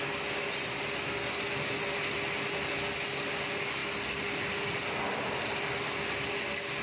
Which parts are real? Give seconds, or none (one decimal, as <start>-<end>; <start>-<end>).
0.0-6.8